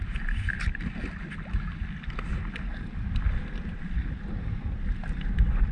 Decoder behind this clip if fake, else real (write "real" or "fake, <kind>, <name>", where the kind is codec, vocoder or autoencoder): real